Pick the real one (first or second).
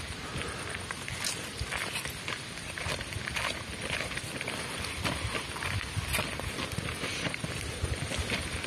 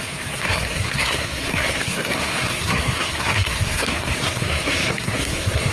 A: first